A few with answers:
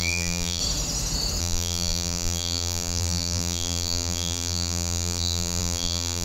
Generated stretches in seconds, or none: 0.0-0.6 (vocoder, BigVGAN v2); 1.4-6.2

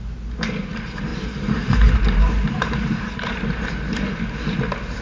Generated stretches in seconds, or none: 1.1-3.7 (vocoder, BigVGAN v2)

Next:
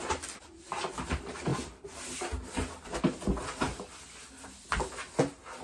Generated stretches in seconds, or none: none

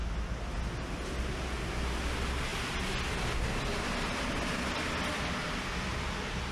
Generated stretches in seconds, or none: none

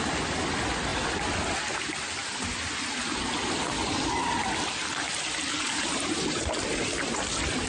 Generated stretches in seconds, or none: 5.5-6.5 (vocoder, BigVGAN v2)

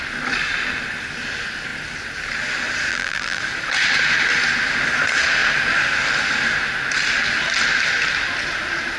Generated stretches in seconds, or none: 2.9-3.4 (vocoder, BigVGAN v2)